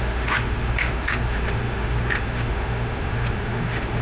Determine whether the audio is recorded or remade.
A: remade